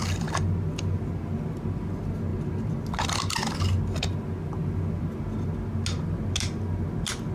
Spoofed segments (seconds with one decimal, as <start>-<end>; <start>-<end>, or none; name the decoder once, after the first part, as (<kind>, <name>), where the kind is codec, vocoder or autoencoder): none